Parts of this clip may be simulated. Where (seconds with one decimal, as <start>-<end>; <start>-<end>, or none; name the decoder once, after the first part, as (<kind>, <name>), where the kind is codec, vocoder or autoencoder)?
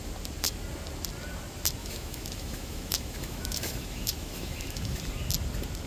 1.8-5.0 (autoencoder, DAC-VAE)